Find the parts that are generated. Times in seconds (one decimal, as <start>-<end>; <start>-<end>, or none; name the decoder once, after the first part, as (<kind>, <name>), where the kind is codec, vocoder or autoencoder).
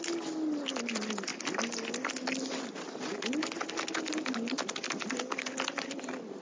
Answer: none